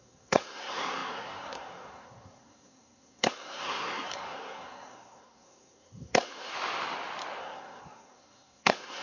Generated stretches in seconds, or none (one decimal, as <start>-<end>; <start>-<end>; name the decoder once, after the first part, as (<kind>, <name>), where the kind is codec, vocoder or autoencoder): 0.0-6.5 (codec, SNAC); 7.4-9.0